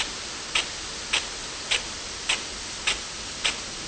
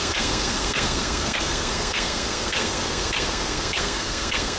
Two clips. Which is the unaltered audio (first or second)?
first